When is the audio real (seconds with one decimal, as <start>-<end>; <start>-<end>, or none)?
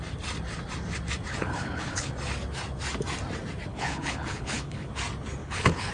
0.0-1.3; 2.1-3.7; 4.9-5.4